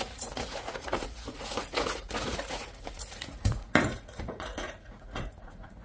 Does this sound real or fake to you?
fake